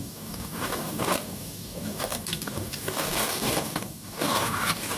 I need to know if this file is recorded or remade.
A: remade